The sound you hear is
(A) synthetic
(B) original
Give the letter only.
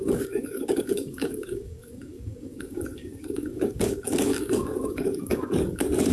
A